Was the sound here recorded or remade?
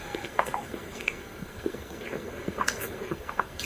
remade